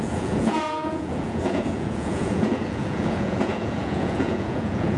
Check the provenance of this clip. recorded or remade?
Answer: remade